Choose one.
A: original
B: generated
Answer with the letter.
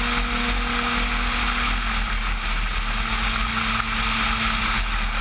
A